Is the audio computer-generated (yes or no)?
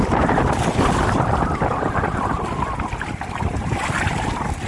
no